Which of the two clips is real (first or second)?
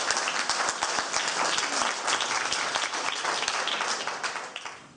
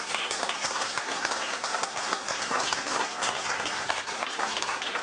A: first